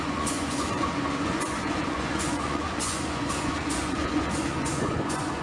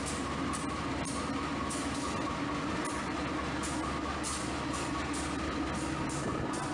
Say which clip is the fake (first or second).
first